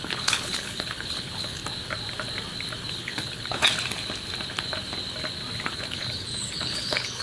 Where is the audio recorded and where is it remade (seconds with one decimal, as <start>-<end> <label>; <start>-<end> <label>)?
0.0-1.6 remade; 1.6-2.9 recorded; 2.9-3.6 remade; 3.6-5.7 recorded; 5.7-7.2 remade